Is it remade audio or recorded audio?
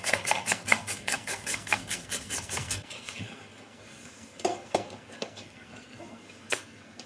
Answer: remade